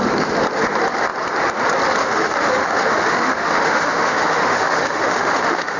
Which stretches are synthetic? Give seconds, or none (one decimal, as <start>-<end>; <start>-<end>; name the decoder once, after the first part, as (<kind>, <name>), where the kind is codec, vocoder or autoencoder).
2.0-5.8 (autoencoder, DAC-VAE)